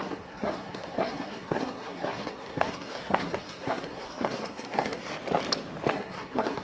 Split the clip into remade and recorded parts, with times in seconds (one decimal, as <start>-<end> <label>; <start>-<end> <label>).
0.0-5.1 remade; 5.1-5.9 recorded; 5.9-6.6 remade